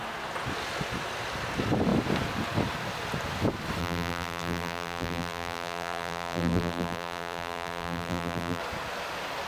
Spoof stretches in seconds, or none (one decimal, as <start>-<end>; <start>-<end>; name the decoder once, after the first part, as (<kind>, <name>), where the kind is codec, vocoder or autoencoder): 3.8-8.6 (vocoder, BigVGAN v2)